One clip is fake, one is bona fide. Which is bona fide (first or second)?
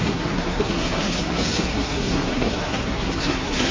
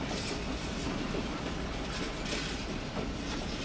second